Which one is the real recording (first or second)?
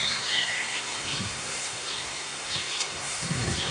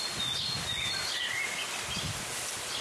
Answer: second